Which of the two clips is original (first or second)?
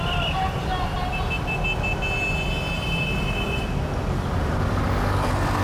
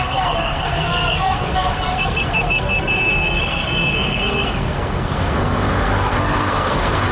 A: first